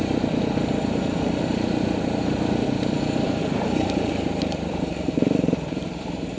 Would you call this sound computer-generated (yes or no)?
yes